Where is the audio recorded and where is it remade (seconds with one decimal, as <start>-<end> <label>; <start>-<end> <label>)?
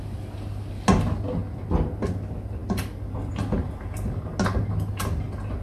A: 0.0-5.6 recorded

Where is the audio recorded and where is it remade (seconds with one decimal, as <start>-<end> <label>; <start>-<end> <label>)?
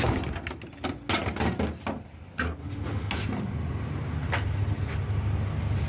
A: 0.0-2.6 recorded; 2.6-3.1 remade; 3.1-5.9 recorded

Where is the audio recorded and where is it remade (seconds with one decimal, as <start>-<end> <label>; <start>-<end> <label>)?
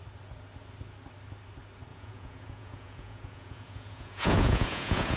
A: 0.0-1.9 recorded; 1.9-5.2 remade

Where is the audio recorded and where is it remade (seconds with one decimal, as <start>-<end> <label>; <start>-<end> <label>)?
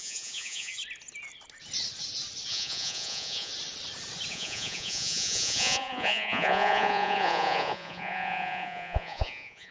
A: 0.0-0.7 remade; 0.7-2.5 recorded; 2.5-3.5 remade; 3.5-4.3 recorded; 4.3-9.7 remade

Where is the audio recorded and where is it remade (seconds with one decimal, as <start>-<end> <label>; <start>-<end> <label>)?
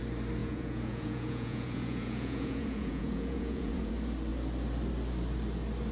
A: 0.0-0.4 recorded; 0.4-3.9 remade; 3.9-5.9 recorded